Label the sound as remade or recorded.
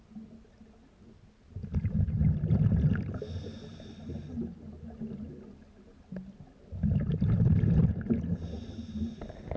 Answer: recorded